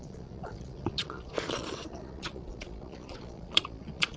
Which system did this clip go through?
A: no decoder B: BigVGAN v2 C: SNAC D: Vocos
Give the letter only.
D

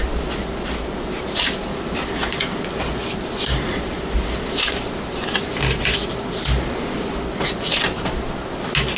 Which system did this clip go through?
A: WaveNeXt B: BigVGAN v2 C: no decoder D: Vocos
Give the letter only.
C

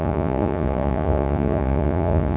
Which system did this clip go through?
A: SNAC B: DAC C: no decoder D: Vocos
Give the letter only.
D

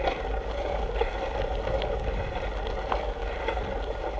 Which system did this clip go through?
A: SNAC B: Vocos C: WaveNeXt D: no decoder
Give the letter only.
D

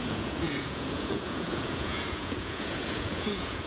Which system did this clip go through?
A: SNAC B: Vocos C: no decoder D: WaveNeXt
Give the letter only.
B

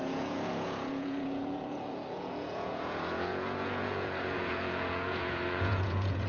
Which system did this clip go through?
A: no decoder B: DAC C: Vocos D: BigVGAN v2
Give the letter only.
C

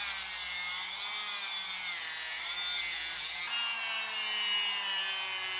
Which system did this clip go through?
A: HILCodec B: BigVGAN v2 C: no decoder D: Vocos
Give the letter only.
C